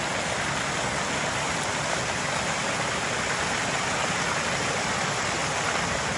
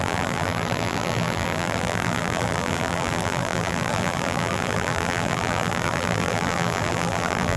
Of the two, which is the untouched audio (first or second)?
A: first